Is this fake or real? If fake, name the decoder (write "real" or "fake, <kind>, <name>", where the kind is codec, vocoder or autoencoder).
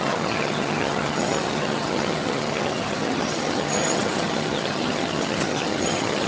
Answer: fake, vocoder, HiFi-GAN